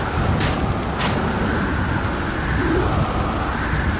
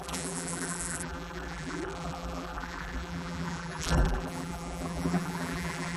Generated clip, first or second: second